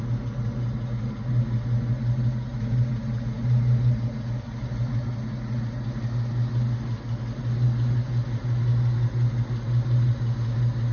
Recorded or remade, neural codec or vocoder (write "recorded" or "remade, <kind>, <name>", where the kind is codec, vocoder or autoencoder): recorded